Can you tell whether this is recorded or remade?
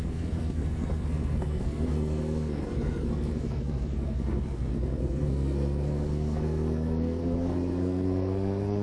remade